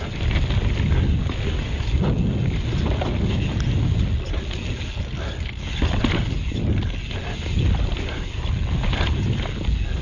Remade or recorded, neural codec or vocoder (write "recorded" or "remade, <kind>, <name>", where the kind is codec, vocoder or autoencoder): recorded